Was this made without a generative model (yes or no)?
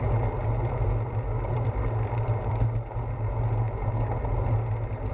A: yes